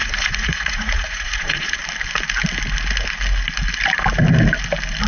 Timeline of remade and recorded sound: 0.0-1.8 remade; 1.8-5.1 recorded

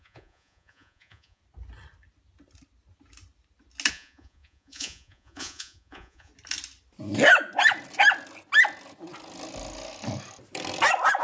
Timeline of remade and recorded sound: 0.0-1.4 remade; 1.4-3.9 recorded; 3.9-6.3 remade; 6.3-11.2 recorded

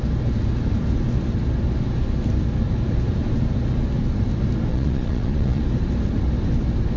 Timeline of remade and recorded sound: 0.0-4.7 recorded; 4.7-5.6 remade; 5.6-7.0 recorded

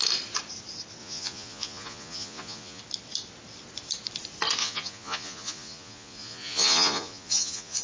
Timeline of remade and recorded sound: 0.0-1.0 recorded; 1.0-2.8 remade; 2.8-4.6 recorded; 4.6-7.8 remade

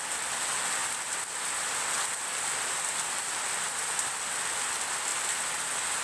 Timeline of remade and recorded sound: 0.0-6.0 recorded

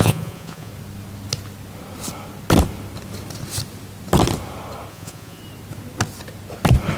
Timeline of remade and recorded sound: 0.0-0.7 remade; 0.7-4.9 recorded; 4.9-5.4 remade; 5.4-7.0 recorded

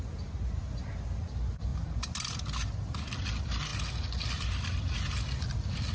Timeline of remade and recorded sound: 0.0-5.9 recorded